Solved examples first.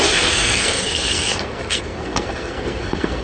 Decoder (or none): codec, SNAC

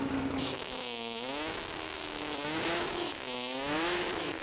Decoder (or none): autoencoder, DAC-VAE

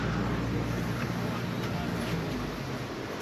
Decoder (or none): none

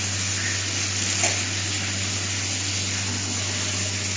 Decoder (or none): none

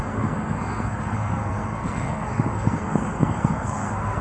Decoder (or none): codec, SNAC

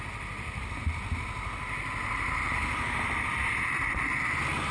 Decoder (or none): none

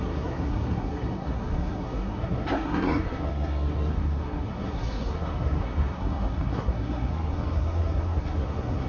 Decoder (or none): codec, SNAC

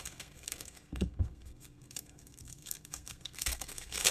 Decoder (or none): codec, SNAC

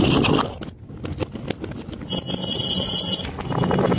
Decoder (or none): none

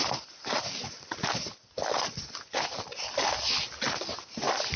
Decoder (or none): none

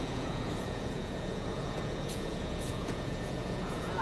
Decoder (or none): vocoder, Vocos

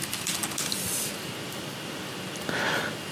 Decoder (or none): none